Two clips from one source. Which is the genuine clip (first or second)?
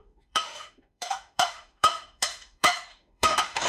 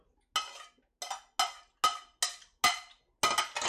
second